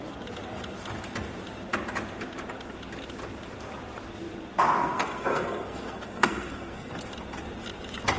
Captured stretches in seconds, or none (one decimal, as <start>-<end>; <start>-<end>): 0.0-4.8; 6.9-8.2